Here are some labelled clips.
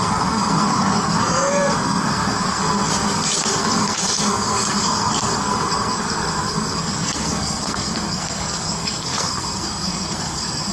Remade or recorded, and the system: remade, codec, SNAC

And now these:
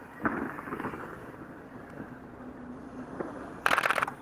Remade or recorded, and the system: recorded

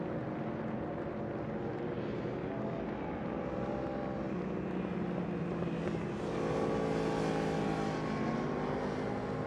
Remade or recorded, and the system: recorded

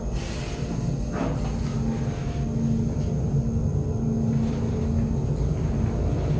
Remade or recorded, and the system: recorded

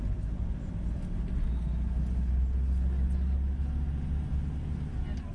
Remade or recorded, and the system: recorded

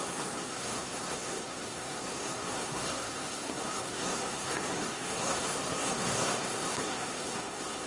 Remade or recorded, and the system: remade, codec, SNAC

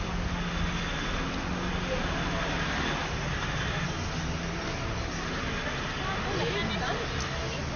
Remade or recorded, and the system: recorded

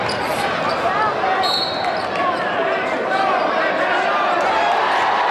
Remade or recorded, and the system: recorded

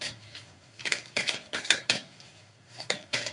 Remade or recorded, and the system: remade, codec, SNAC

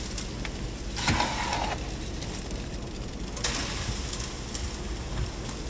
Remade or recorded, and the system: recorded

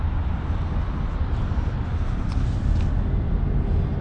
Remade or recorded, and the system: recorded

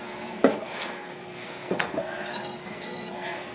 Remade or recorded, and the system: remade, codec, SNAC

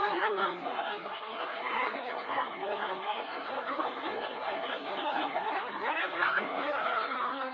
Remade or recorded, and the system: remade, codec, SNAC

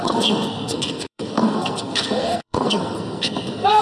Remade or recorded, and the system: remade, codec, SNAC